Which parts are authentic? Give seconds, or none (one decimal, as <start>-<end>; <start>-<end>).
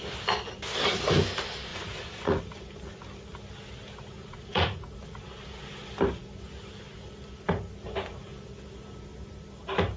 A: 0.0-1.7; 2.4-4.2; 4.9-10.0